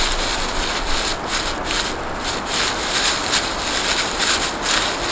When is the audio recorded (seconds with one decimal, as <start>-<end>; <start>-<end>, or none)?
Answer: 0.0-5.1